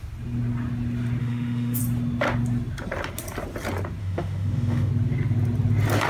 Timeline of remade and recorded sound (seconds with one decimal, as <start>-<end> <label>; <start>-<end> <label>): 0.0-1.2 recorded; 1.2-1.8 remade; 1.8-4.0 recorded; 4.0-4.9 remade; 4.9-6.1 recorded